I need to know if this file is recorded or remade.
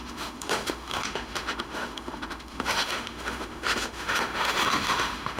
remade